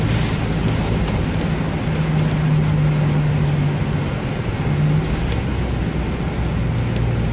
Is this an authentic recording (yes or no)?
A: yes